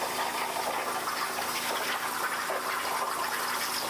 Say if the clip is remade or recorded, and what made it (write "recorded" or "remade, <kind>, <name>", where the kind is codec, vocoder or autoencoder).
recorded